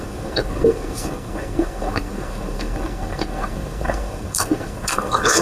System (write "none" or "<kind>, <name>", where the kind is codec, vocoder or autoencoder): codec, SNAC